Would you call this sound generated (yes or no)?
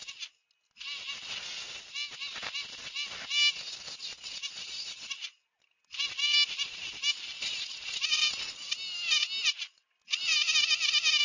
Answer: no